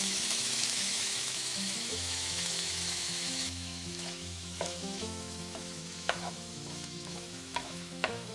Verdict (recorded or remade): remade